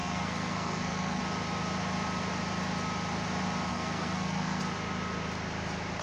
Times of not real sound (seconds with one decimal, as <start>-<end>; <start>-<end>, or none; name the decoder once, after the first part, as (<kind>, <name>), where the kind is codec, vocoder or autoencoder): 0.0-1.2 (codec, SNAC); 3.7-4.6